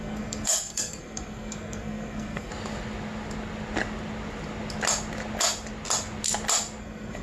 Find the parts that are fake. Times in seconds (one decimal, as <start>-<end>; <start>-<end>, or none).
0.0-2.5; 6.8-7.2